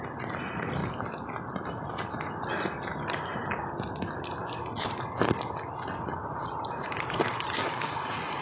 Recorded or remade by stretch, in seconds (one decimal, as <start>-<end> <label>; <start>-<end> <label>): 0.0-0.8 recorded; 0.8-1.7 remade; 1.7-2.9 recorded; 2.9-3.4 remade; 3.4-6.2 recorded; 6.2-7.4 remade; 7.4-8.4 recorded